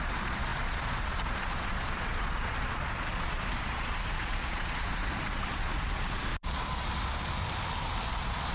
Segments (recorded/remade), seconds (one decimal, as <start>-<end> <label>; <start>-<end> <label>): 0.0-6.3 remade; 6.3-8.1 recorded; 8.1-8.5 remade